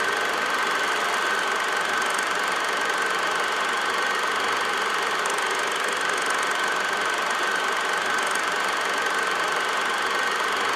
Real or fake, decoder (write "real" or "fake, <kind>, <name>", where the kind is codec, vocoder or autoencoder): real